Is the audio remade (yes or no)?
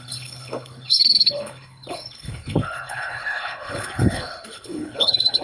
yes